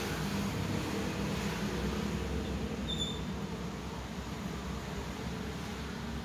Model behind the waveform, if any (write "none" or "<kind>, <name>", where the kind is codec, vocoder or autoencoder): none